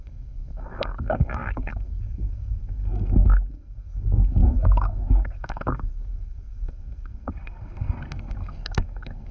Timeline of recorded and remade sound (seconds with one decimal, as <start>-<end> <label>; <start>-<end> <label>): 0.0-9.3 remade